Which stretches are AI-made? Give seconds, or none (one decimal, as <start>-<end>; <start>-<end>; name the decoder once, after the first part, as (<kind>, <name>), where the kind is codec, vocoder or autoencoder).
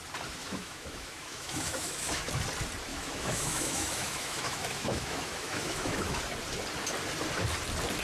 0.4-2.3 (autoencoder, DAC-VAE); 2.9-6.2